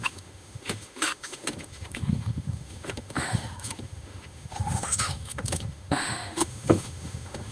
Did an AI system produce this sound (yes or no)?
yes